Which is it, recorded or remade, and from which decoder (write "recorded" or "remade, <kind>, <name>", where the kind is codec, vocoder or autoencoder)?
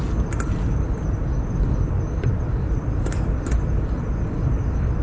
recorded